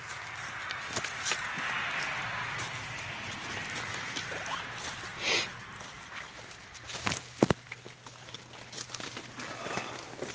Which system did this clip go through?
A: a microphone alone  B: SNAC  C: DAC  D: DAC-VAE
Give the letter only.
A